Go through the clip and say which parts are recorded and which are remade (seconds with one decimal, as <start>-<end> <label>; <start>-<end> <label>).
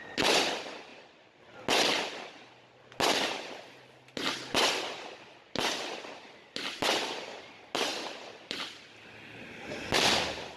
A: 0.0-7.9 recorded; 7.9-9.5 remade; 9.5-10.6 recorded